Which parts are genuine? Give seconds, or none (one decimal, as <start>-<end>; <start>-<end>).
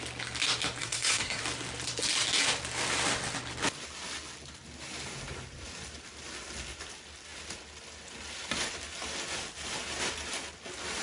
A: 0.0-0.8; 1.4-11.0